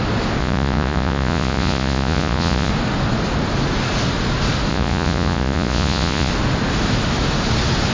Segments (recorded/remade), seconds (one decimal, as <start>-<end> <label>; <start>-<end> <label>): 0.0-0.4 recorded; 0.4-2.7 remade; 2.7-4.7 recorded; 4.7-6.3 remade; 6.3-7.9 recorded